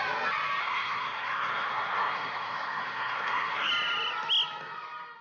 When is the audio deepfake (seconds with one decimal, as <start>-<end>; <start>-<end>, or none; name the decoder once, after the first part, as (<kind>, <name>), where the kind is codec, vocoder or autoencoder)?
0.6-3.7 (codec, SNAC)